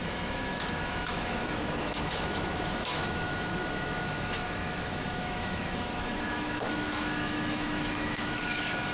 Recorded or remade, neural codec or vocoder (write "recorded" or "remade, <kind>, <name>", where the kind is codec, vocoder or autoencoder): remade, autoencoder, DAC-VAE